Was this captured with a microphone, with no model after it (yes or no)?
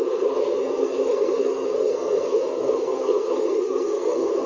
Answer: no